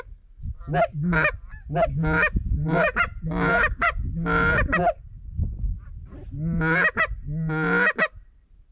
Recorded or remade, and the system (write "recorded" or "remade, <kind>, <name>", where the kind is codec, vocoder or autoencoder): recorded